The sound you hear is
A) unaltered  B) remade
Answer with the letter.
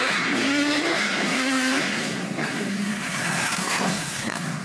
B